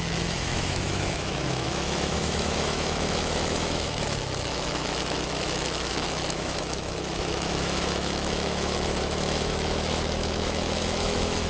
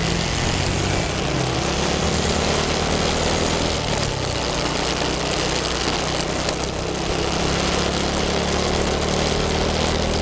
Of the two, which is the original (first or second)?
second